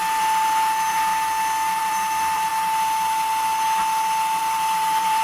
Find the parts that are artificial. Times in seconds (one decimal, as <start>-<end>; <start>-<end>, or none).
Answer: 0.0-1.1; 1.8-2.5; 4.4-5.2